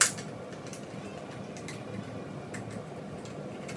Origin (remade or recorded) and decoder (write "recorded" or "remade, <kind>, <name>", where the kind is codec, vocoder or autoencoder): recorded